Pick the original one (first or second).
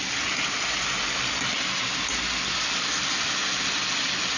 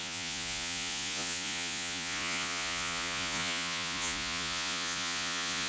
first